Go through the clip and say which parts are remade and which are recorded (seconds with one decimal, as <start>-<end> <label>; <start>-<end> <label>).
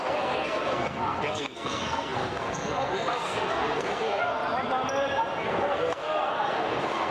0.0-4.4 remade; 4.4-5.4 recorded; 5.4-7.1 remade